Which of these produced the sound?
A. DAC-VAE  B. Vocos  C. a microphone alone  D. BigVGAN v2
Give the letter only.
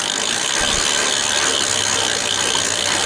C